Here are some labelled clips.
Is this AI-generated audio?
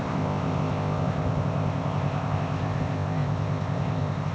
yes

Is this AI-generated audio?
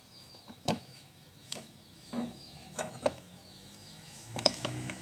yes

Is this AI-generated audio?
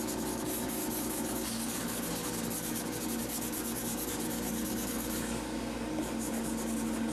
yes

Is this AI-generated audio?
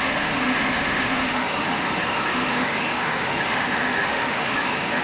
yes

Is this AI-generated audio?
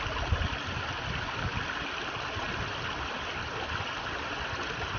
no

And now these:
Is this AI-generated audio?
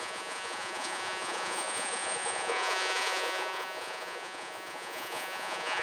yes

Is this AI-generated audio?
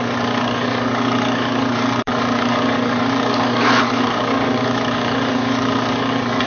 yes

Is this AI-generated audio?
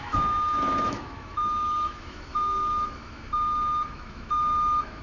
yes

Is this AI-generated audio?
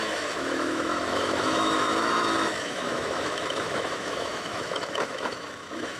yes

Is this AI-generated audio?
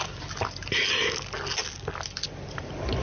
no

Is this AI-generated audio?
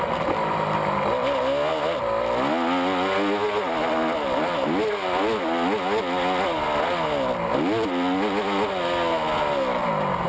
no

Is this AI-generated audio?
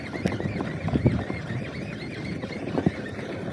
no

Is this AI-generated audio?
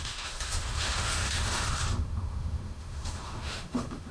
yes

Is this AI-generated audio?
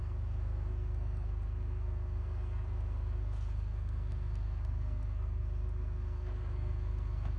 yes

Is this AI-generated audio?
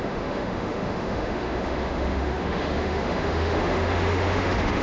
yes